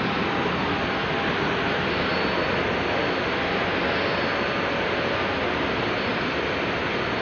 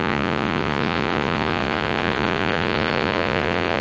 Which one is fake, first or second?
second